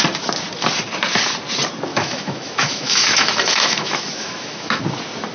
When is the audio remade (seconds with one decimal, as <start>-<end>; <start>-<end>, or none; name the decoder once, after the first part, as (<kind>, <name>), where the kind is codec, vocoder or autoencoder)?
1.9-4.8 (autoencoder, DAC-VAE)